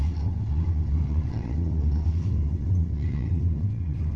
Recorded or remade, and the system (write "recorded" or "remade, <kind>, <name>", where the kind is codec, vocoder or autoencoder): remade, vocoder, WaveNeXt